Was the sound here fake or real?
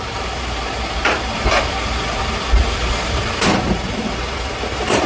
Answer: fake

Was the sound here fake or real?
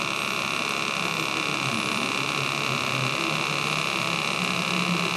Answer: real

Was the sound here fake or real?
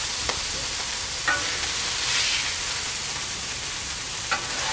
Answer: real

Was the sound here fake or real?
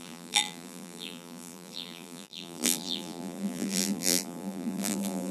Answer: fake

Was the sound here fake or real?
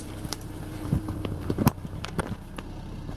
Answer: fake